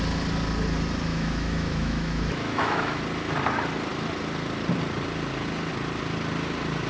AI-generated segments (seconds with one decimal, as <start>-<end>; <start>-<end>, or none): 1.1-3.0